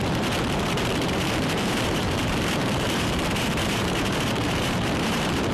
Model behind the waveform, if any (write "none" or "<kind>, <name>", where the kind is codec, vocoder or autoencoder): vocoder, BigVGAN v2